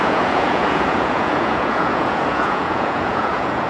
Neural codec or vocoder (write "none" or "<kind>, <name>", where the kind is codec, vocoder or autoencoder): vocoder, Vocos